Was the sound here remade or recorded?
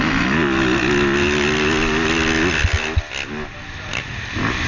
recorded